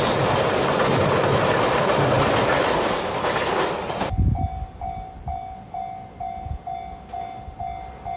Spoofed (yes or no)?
no